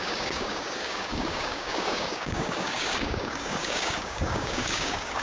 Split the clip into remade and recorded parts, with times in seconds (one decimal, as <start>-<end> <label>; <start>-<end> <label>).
0.0-5.2 remade